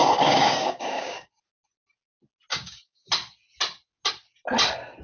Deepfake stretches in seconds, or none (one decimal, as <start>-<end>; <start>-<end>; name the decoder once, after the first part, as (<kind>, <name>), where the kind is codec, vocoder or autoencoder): 0.0-1.3 (codec, DAC); 2.5-3.1